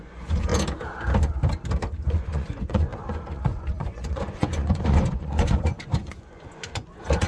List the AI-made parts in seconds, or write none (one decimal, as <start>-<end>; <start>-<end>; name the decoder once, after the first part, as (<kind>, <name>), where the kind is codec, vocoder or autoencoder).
0.0-0.5 (vocoder, Vocos); 2.1-7.3